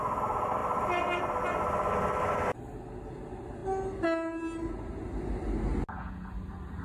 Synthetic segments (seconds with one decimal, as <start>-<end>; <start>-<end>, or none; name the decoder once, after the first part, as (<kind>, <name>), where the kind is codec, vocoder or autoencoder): none